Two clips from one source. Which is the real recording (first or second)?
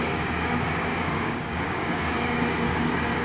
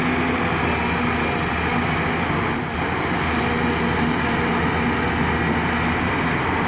second